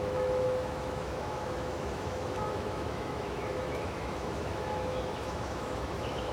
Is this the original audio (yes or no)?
no